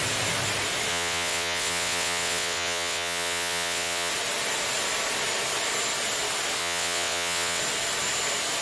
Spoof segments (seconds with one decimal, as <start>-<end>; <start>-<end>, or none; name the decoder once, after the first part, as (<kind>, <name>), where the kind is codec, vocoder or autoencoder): 0.9-4.1 (vocoder, WaveNeXt); 6.6-7.6